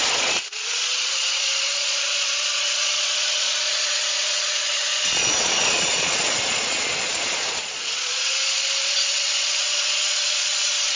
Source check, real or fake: fake